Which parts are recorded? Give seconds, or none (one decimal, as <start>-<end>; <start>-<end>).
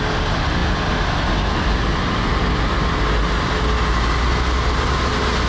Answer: 0.0-5.5